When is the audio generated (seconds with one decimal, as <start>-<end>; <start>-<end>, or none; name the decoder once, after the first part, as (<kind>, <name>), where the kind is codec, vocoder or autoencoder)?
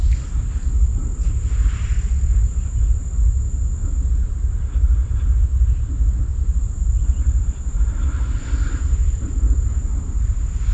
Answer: 4.4-5.1 (vocoder, BigVGAN v2); 6.3-9.2